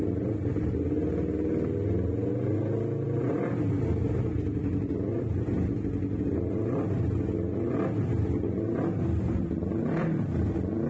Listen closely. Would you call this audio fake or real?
real